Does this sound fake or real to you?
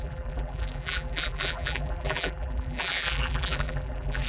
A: fake